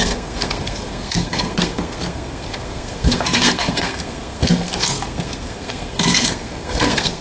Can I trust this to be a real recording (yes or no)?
no